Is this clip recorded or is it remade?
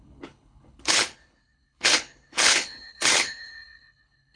remade